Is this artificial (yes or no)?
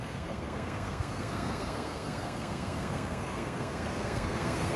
yes